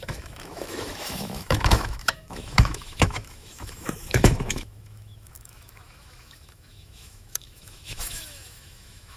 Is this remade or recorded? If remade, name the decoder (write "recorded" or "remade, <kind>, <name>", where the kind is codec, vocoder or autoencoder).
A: remade, autoencoder, DAC-VAE